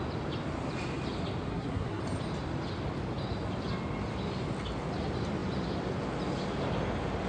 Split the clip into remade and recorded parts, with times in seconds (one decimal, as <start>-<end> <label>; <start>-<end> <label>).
0.0-1.5 recorded; 1.5-2.0 remade; 2.0-7.3 recorded